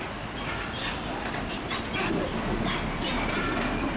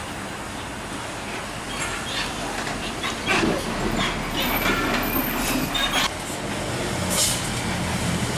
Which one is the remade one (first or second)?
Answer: first